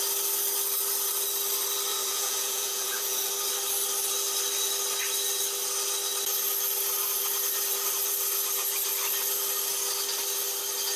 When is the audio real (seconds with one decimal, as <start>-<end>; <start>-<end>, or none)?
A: 0.0-1.9; 3.3-11.0